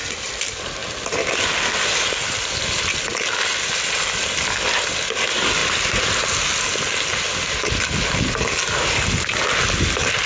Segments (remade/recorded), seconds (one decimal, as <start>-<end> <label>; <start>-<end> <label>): 0.0-10.3 recorded